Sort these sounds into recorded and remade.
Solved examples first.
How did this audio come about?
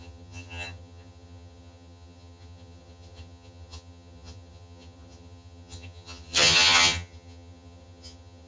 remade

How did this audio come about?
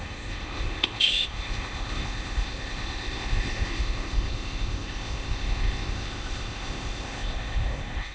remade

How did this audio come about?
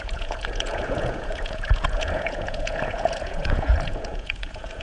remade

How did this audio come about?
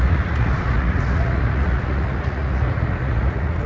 remade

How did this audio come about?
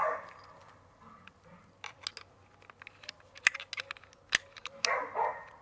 recorded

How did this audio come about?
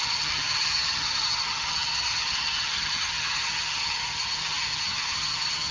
remade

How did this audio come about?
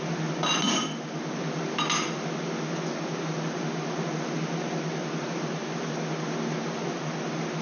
recorded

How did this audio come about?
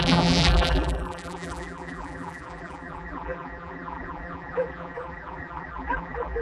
remade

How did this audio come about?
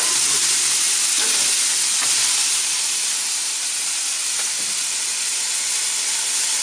recorded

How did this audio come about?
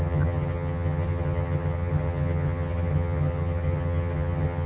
remade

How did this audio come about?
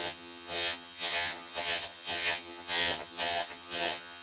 remade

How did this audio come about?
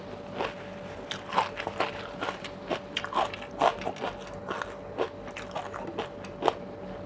recorded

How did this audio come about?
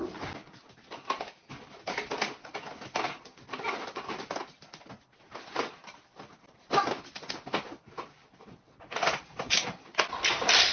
recorded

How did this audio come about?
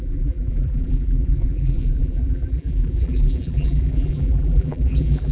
remade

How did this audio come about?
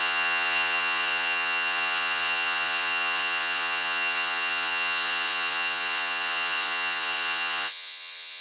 remade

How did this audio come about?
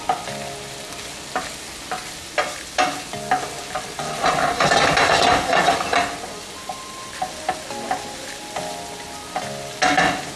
recorded